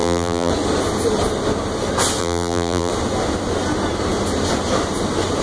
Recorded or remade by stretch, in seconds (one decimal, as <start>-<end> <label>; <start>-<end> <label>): 0.0-0.5 remade; 0.5-2.2 recorded; 2.2-2.9 remade; 2.9-5.4 recorded